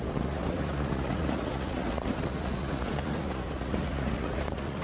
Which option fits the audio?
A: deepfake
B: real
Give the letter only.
A